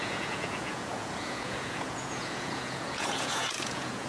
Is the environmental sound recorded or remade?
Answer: remade